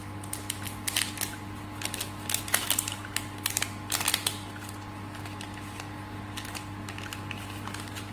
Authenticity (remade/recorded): recorded